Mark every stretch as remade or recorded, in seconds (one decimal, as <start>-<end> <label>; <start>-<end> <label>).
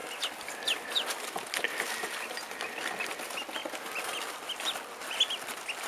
0.0-5.9 recorded